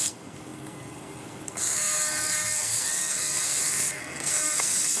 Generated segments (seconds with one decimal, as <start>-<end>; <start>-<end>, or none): 0.0-5.0

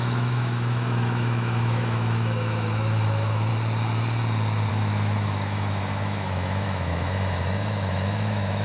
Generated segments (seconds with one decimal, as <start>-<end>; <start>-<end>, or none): 0.0-3.5; 4.7-8.6

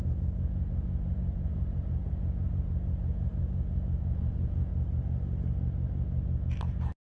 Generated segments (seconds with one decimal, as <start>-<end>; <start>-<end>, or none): 0.0-4.7

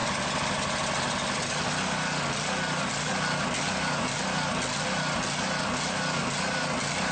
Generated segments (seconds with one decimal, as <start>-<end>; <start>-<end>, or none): none

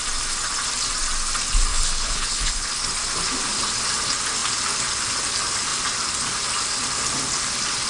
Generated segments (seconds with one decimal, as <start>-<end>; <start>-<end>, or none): 1.7-2.7